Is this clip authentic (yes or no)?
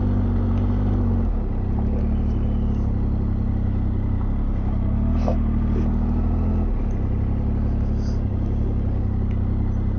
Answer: yes